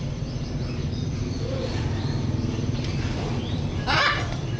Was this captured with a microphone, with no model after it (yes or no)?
no